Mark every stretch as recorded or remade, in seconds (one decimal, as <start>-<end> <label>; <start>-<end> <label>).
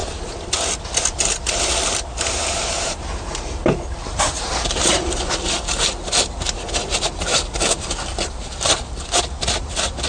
0.0-1.9 recorded; 1.9-5.0 remade; 5.0-10.1 recorded